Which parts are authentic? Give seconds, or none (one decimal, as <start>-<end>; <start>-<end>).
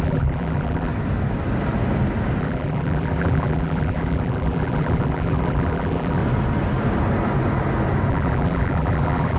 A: 0.9-2.4; 6.2-8.1